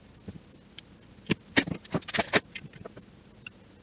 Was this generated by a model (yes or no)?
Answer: no